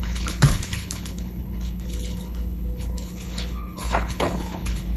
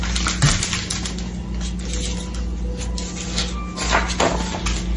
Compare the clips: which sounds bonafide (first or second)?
second